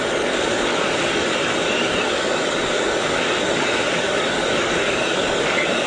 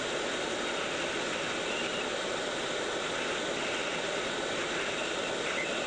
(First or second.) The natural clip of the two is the second